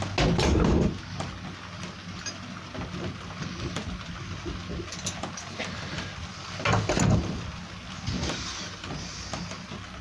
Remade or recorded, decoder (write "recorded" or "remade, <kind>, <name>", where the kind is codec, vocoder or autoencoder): recorded